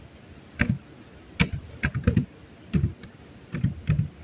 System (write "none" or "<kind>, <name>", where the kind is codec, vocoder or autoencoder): none